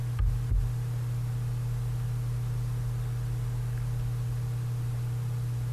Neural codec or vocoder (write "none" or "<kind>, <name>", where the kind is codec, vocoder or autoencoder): none